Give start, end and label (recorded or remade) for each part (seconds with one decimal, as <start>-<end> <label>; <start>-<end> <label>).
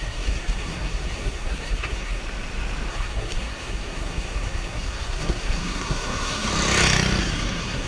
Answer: 0.0-2.2 remade; 2.2-2.9 recorded; 2.9-6.5 remade; 6.5-7.2 recorded; 7.2-7.9 remade